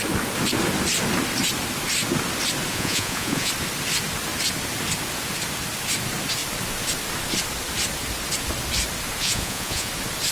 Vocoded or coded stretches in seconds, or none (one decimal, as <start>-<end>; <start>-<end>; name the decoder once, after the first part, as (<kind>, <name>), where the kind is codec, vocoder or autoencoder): 2.7-3.5 (vocoder, Vocos); 9.2-9.9